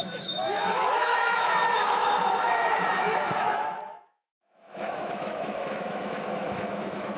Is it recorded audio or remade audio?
remade